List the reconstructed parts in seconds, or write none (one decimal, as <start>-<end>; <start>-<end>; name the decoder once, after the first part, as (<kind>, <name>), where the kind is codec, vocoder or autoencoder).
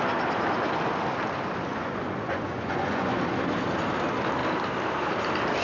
1.7-3.2 (vocoder, Vocos)